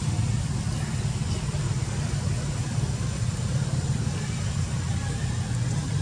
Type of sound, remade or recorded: recorded